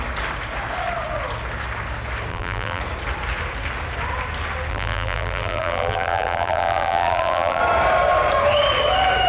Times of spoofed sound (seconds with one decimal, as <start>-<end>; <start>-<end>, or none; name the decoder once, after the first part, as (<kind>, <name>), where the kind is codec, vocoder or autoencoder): 2.3-2.8 (vocoder, BigVGAN v2); 4.7-7.6